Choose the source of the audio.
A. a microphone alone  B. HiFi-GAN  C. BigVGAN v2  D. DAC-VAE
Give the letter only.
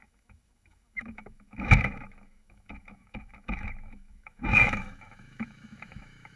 D